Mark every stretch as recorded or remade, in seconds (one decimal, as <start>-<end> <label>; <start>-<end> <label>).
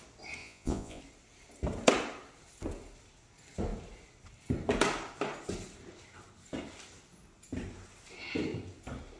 0.0-0.4 recorded; 0.4-1.0 remade; 1.0-9.2 recorded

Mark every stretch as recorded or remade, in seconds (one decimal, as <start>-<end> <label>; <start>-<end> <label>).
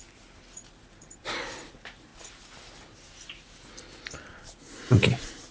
0.0-5.5 recorded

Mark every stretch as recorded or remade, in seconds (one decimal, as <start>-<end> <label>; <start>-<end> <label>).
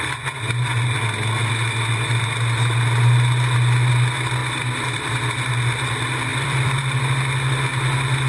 0.0-4.4 recorded; 4.4-5.1 remade; 5.1-6.3 recorded; 6.3-6.8 remade; 6.8-8.3 recorded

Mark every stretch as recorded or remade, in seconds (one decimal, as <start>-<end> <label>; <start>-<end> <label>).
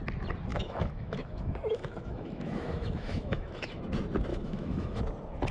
0.0-0.5 recorded; 0.5-3.8 remade; 3.8-4.3 recorded; 4.3-5.0 remade; 5.0-5.5 recorded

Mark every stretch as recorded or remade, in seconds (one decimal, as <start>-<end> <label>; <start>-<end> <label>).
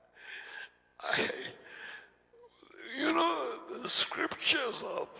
0.0-5.2 recorded